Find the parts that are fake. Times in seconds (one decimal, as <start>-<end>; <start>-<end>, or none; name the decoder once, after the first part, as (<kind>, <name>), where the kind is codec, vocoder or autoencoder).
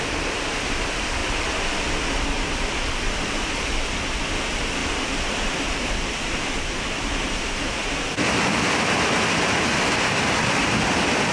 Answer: 0.0-11.3 (vocoder, BigVGAN v2)